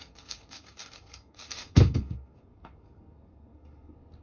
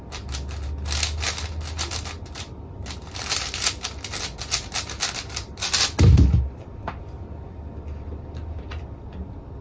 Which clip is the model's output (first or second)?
first